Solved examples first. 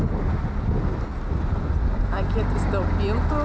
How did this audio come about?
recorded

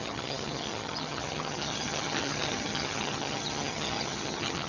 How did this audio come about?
remade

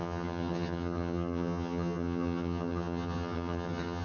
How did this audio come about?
remade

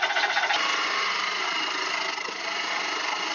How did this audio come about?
recorded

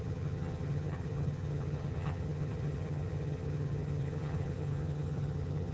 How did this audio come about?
remade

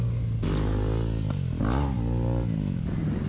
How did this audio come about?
recorded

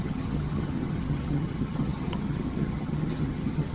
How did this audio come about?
remade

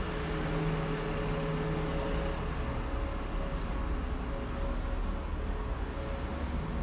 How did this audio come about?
recorded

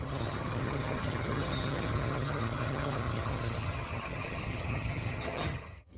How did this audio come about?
remade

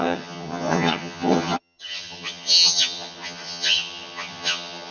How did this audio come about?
remade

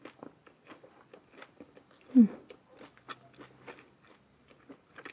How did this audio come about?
recorded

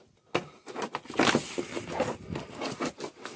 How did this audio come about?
recorded